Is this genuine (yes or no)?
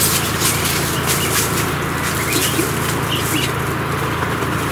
yes